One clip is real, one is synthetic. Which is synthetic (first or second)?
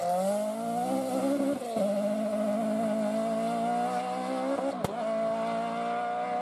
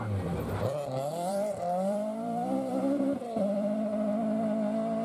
second